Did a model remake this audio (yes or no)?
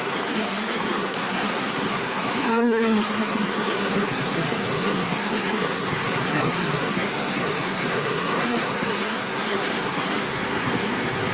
yes